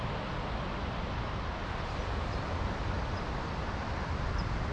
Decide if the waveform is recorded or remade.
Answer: recorded